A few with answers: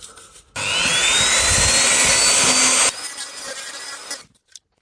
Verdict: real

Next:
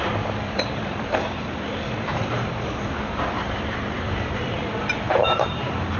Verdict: fake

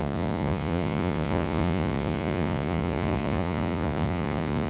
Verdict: fake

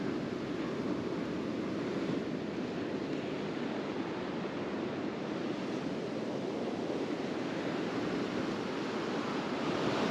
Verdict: real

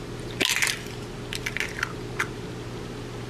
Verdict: real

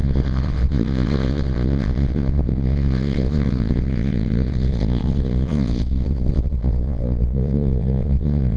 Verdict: fake